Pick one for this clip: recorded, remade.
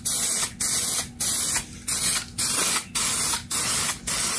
recorded